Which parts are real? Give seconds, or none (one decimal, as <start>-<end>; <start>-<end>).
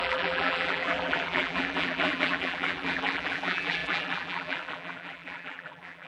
none